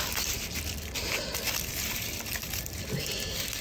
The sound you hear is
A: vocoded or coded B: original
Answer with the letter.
A